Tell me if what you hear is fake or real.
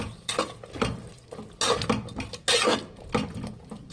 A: real